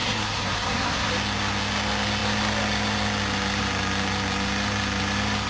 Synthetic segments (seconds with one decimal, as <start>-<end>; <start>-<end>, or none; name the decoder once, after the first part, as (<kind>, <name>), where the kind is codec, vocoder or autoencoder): 0.0-1.1 (codec, SNAC)